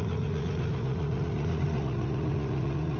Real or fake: fake